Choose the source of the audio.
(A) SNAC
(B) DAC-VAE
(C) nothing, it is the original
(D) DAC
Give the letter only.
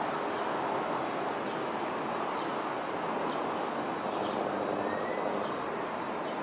C